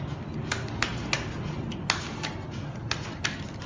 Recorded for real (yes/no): yes